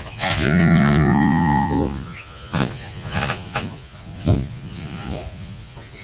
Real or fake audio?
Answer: fake